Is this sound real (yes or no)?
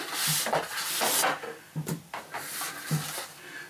yes